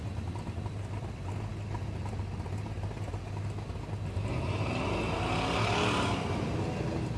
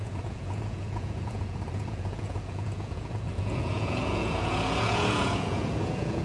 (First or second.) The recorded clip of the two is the first